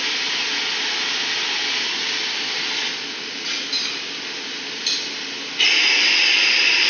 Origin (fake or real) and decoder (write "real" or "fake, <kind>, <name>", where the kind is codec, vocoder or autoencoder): real